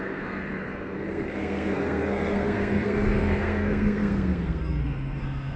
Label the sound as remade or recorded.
remade